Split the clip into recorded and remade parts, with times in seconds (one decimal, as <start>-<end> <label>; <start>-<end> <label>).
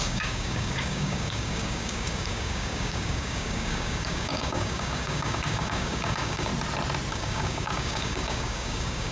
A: 0.0-6.5 remade; 6.5-7.1 recorded; 7.1-9.1 remade